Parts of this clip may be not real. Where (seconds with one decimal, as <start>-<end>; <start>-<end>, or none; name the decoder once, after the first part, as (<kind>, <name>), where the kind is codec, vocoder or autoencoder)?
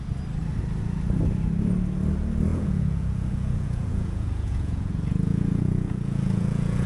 2.5-6.9 (vocoder, Vocos)